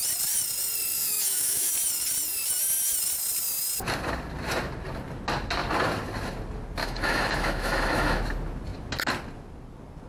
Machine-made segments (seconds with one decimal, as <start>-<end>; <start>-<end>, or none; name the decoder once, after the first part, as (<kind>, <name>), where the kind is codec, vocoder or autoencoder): 0.9-1.7 (autoencoder, DAC-VAE); 6.8-8.2

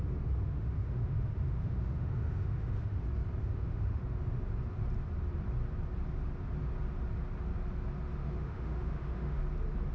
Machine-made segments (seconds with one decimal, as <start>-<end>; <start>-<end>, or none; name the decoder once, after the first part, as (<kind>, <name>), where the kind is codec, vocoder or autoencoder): 0.5-3.0 (autoencoder, DAC-VAE); 3.4-4.0; 8.2-9.4

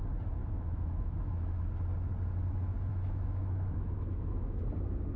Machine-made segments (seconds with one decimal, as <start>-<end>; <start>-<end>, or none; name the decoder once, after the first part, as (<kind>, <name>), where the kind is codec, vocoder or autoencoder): 0.4-1.3 (autoencoder, DAC-VAE); 2.9-4.6

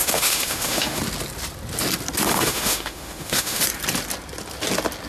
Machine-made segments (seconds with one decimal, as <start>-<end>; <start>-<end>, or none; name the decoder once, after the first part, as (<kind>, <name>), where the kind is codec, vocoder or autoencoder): 0.0-1.0 (autoencoder, DAC-VAE); 2.3-3.6

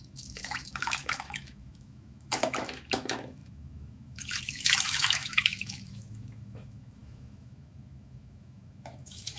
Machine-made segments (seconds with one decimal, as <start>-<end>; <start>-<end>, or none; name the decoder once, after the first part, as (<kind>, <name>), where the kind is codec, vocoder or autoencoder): 0.0-9.4 (autoencoder, DAC-VAE)

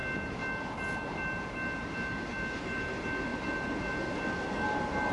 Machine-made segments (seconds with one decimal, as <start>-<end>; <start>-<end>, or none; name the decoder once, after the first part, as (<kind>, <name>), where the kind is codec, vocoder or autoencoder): none